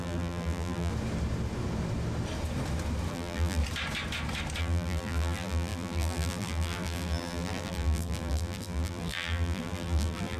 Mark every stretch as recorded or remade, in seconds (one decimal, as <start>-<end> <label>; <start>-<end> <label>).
0.0-0.9 remade; 0.9-3.1 recorded; 3.1-3.6 remade; 3.6-4.6 recorded; 4.6-10.4 remade